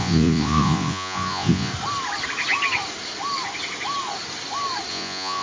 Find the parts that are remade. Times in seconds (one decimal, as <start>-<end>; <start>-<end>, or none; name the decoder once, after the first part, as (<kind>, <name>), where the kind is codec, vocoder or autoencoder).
0.0-1.7 (vocoder, Vocos); 4.9-5.4

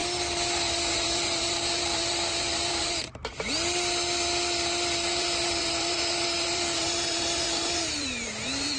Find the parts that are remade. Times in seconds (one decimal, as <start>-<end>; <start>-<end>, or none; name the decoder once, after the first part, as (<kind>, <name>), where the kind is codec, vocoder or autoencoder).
0.9-3.2 (vocoder, BigVGAN v2); 5.1-8.8

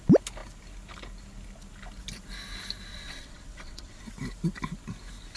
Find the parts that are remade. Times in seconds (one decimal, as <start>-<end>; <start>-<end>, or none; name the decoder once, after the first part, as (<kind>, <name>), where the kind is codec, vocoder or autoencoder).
2.9-4.0 (vocoder, WaveNeXt)

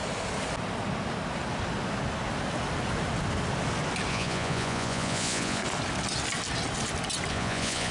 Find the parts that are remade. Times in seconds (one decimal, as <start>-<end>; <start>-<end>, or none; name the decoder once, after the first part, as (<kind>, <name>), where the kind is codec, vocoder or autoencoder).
4.1-5.6 (vocoder, Vocos); 7.3-7.9

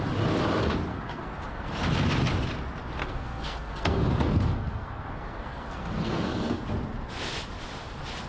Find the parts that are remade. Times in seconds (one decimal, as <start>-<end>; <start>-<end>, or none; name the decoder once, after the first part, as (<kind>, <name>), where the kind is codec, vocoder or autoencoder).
0.9-1.7 (codec, SNAC); 3.0-6.6